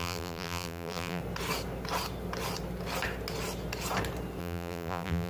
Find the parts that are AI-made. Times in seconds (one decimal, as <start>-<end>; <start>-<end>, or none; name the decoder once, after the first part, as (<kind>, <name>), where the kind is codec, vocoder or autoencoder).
0.0-1.2 (vocoder, BigVGAN v2); 4.4-5.3

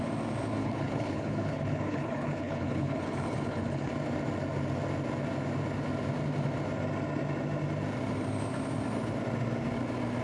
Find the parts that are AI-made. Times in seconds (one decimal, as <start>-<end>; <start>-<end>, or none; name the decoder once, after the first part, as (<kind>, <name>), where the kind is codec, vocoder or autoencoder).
0.6-3.9 (codec, HILCodec)